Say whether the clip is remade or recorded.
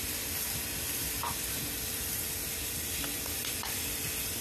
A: recorded